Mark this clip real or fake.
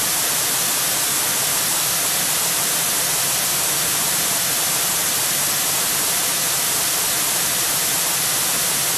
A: real